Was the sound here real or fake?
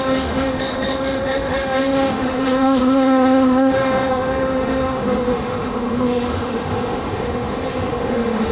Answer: fake